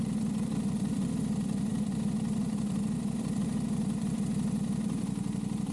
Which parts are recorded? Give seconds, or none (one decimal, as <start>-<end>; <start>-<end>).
0.0-1.7; 2.8-5.7